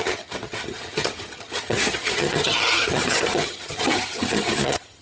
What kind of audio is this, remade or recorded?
remade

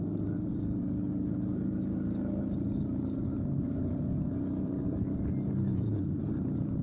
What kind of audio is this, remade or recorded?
recorded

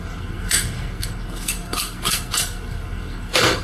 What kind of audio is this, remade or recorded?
remade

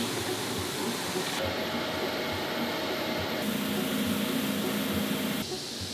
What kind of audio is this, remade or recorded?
recorded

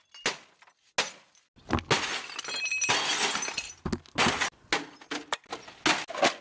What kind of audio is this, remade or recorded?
recorded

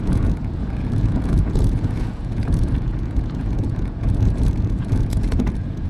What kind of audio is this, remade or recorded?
remade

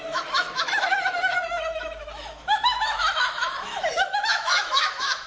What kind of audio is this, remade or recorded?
remade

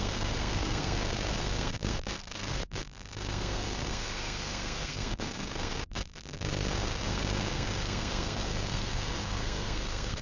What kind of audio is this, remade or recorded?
remade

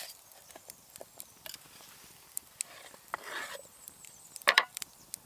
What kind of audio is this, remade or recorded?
remade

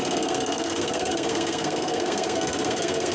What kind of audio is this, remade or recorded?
remade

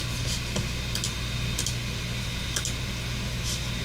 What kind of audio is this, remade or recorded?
recorded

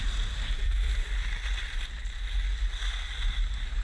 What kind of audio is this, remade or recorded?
recorded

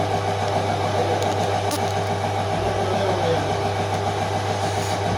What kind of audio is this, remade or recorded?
recorded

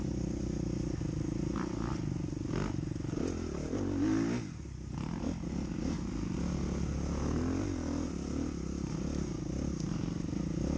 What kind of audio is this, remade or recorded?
recorded